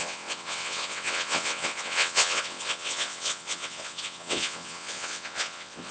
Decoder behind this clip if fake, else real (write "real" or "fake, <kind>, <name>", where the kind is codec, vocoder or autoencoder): fake, vocoder, WaveNeXt